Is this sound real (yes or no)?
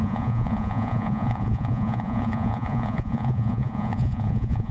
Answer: no